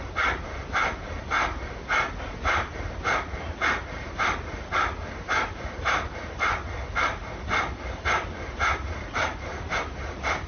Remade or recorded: recorded